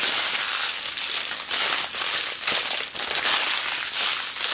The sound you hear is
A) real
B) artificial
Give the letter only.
A